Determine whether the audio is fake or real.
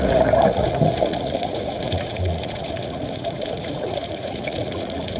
fake